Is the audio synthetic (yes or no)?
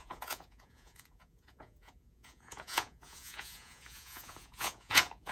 yes